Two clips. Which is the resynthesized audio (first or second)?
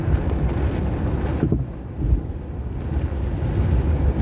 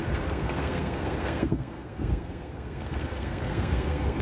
second